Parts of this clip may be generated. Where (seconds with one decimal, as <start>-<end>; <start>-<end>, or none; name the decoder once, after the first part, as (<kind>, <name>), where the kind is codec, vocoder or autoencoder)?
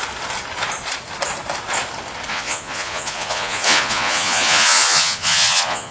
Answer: 2.3-5.9 (vocoder, Vocos)